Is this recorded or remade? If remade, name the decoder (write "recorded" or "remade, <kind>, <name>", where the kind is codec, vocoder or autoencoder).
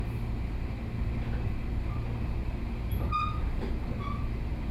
recorded